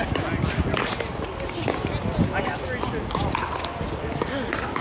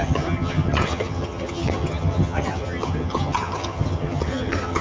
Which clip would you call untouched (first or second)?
first